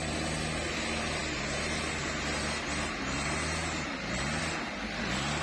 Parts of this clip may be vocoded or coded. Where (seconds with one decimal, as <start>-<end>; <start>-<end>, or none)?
none